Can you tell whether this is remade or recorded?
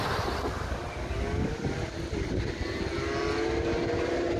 recorded